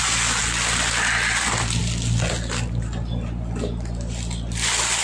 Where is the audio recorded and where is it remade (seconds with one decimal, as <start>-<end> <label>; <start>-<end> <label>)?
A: 0.0-5.0 recorded